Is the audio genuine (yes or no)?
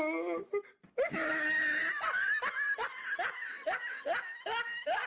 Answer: yes